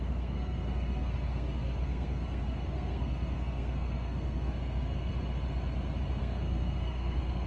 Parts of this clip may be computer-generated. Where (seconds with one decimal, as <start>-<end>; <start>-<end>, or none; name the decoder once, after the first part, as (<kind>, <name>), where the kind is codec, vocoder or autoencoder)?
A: 0.0-5.1 (codec, SNAC); 6.2-7.5